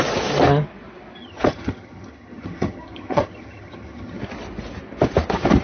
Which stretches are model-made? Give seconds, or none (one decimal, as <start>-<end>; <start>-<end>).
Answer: 1.2-4.2